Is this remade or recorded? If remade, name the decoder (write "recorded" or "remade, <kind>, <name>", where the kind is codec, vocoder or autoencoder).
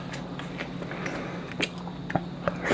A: recorded